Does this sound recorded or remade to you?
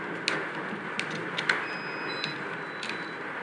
recorded